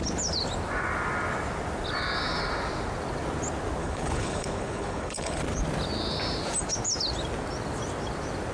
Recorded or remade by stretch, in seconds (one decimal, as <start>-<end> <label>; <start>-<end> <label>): 0.0-3.8 recorded; 3.8-5.4 remade; 5.4-8.5 recorded